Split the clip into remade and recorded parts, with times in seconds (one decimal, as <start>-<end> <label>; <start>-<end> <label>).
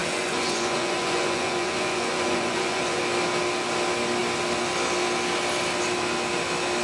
0.0-3.0 remade; 3.0-6.8 recorded